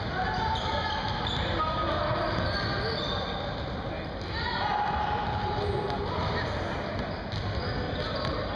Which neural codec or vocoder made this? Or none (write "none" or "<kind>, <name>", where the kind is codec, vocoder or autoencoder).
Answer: none